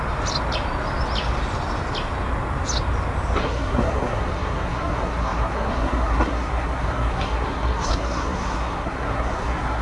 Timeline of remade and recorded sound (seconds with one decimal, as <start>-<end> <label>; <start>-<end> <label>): 0.0-3.4 recorded; 3.4-9.8 remade